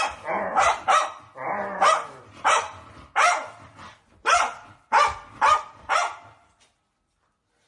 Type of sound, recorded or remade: recorded